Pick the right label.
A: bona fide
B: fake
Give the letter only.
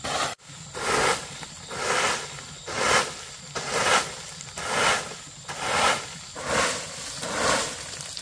A